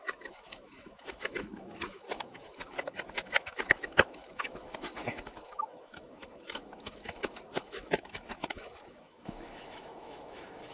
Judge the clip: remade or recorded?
remade